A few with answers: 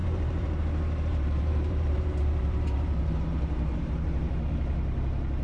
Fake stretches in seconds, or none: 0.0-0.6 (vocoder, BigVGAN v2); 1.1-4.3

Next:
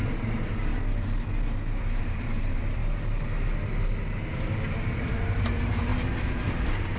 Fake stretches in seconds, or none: 0.0-0.7 (vocoder, BigVGAN v2); 2.0-2.8; 4.3-7.0

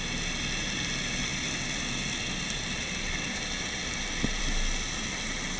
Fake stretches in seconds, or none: none

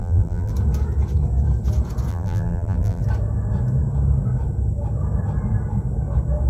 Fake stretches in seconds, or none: 0.0-0.5 (vocoder, BigVGAN v2); 2.1-3.0

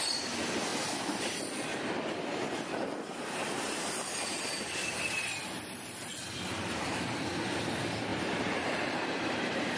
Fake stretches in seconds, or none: 8.1-9.8 (vocoder, BigVGAN v2)